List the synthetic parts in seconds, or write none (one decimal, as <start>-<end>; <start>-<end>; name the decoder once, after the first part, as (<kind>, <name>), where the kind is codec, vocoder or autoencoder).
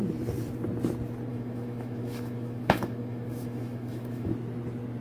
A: 1.3-4.3 (autoencoder, DAC-VAE)